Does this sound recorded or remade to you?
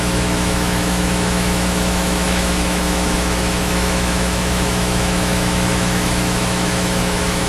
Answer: remade